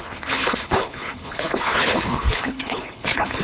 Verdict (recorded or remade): remade